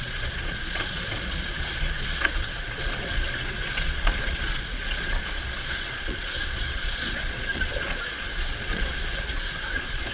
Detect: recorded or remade remade